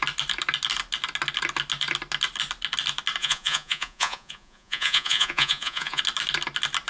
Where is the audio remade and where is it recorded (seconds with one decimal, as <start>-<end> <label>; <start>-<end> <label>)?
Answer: 0.0-3.2 recorded; 3.2-6.0 remade; 6.0-6.9 recorded